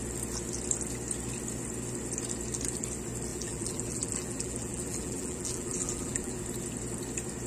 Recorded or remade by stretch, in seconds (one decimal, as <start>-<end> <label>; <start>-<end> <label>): 0.0-3.3 recorded; 3.3-6.4 remade; 6.4-7.5 recorded